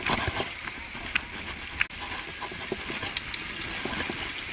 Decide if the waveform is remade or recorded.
recorded